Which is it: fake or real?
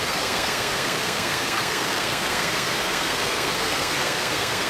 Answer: fake